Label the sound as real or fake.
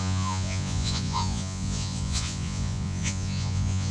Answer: fake